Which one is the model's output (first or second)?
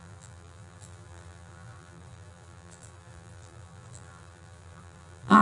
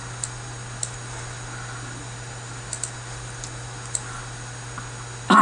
first